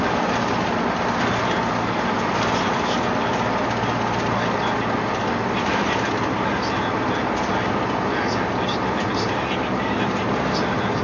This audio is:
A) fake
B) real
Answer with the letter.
B